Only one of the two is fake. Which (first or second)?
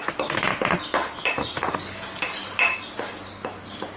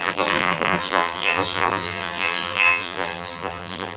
second